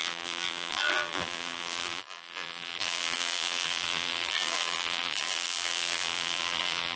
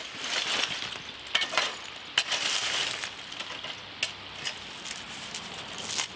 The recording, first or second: second